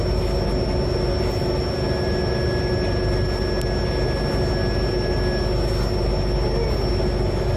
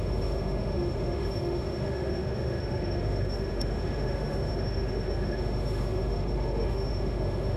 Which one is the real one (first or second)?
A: first